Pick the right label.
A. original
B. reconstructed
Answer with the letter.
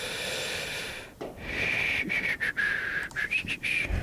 A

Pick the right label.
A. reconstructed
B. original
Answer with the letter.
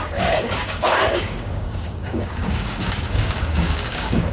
A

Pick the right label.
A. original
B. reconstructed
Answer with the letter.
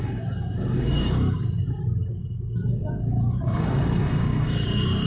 B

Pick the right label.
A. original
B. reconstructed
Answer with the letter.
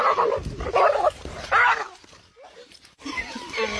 A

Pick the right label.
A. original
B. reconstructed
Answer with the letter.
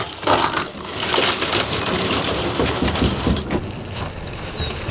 A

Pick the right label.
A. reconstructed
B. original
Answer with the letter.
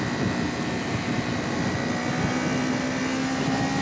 B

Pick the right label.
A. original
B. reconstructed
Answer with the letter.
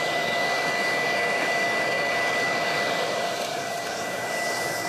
B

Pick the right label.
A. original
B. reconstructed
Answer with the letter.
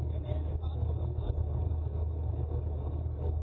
B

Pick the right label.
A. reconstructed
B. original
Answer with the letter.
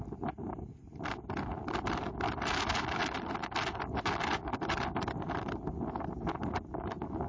B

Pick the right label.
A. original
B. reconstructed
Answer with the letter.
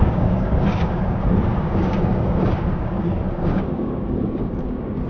B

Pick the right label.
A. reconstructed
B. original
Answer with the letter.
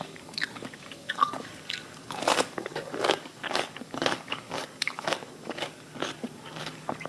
A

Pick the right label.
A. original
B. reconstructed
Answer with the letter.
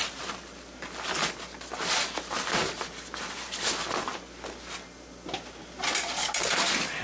A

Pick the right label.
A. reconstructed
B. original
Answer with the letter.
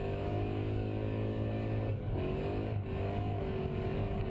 A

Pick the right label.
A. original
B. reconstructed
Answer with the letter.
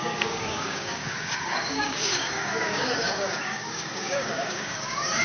B